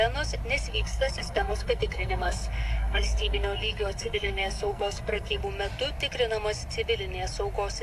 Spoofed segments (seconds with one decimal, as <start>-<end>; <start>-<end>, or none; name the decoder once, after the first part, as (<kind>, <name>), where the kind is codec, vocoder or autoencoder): 0.7-5.4 (codec, SNAC)